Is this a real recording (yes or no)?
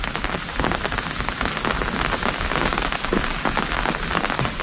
yes